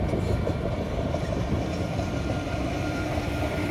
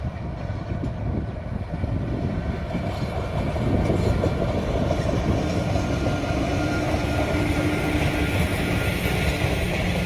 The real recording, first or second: second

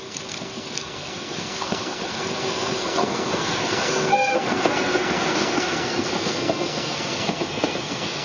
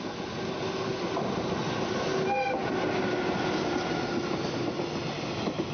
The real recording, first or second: second